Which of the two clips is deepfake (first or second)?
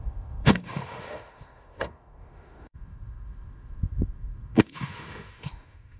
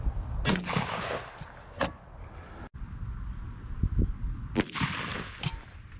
first